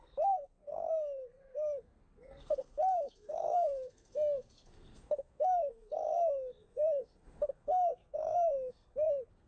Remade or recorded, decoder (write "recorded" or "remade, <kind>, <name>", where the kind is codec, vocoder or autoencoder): remade, codec, SNAC